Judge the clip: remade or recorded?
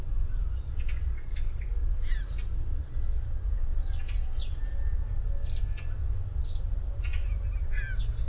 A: recorded